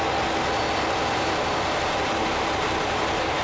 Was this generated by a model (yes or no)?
no